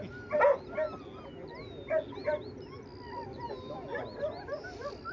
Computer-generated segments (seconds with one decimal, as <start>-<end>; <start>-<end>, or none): 2.9-3.5